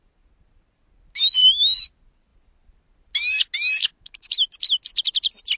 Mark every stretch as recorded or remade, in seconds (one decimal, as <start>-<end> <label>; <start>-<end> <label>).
0.0-3.8 recorded; 3.8-4.3 remade; 4.3-5.6 recorded

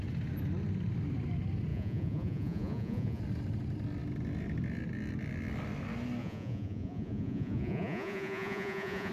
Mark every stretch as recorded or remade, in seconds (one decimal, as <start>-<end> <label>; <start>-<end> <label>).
0.0-1.7 recorded; 1.7-3.2 remade; 3.2-6.2 recorded; 6.2-9.1 remade